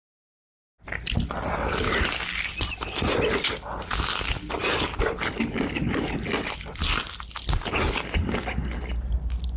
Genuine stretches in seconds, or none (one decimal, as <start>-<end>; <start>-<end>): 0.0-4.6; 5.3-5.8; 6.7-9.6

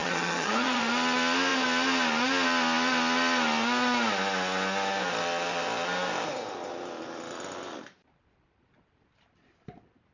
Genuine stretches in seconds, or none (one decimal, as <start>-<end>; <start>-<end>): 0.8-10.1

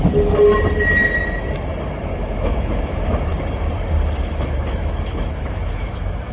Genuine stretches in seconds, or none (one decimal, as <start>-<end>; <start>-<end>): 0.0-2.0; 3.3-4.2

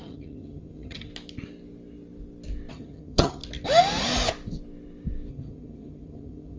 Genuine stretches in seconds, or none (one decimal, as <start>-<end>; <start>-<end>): 1.1-2.7; 3.4-5.3